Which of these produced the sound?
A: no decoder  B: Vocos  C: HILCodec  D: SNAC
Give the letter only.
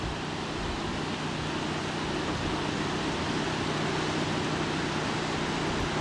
A